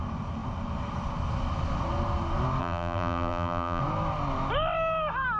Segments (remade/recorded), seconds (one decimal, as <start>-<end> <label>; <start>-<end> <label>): 0.0-2.6 recorded; 2.6-3.8 remade; 3.8-5.4 recorded